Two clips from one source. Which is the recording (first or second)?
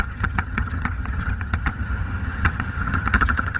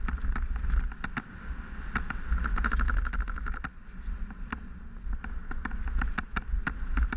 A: second